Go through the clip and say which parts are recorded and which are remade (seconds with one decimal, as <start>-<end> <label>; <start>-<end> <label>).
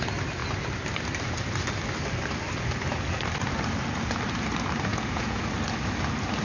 0.0-4.9 recorded; 4.9-5.4 remade; 5.4-6.4 recorded